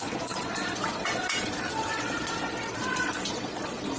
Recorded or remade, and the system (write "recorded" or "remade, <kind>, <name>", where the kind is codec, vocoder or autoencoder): remade, vocoder, Vocos